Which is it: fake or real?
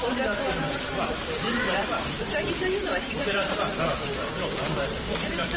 fake